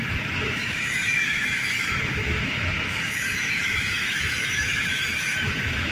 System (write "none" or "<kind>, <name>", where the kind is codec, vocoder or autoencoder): autoencoder, DAC-VAE